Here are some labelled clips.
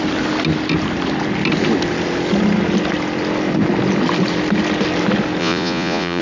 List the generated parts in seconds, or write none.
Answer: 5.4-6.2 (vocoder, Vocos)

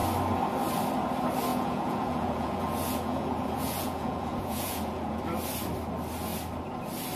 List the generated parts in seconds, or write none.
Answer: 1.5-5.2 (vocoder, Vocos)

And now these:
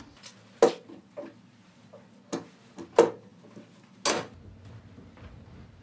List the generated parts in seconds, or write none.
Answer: none

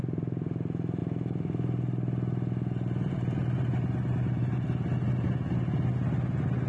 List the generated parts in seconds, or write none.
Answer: none

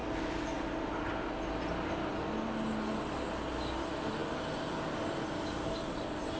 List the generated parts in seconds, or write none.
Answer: none

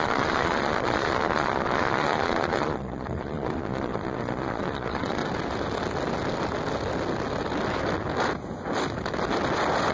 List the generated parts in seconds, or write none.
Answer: 0.0-5.2 (vocoder, Vocos)

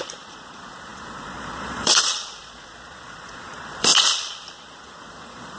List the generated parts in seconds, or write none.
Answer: 0.0-5.6 (vocoder, Vocos)